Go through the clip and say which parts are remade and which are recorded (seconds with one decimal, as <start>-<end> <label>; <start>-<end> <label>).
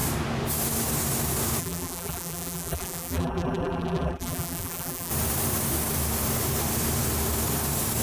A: 0.0-1.6 recorded; 1.6-5.1 remade; 5.1-8.0 recorded